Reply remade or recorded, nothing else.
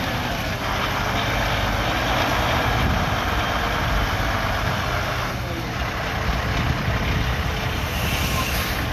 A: recorded